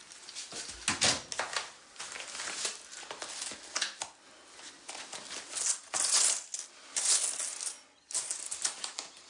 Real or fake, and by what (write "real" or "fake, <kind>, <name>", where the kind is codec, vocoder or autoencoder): real